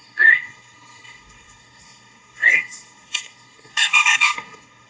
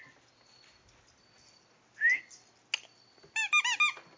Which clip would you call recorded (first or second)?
second